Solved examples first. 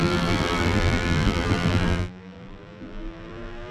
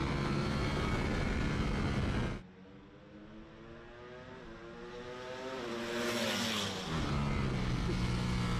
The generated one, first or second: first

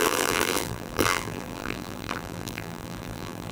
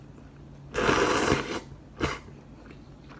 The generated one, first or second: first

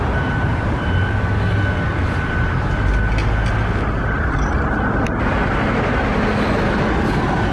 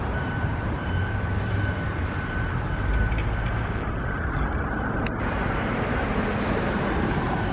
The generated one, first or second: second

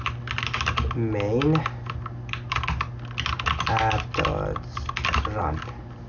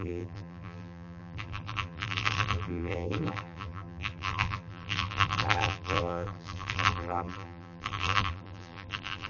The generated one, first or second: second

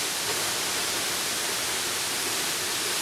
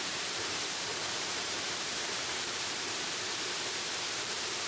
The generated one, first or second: second